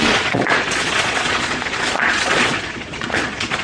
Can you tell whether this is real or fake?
fake